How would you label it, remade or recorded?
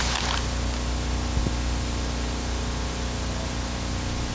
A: recorded